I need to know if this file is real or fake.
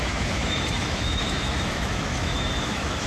fake